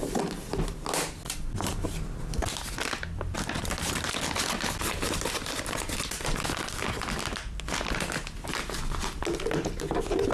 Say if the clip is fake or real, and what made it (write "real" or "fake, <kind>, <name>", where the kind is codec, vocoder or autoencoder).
real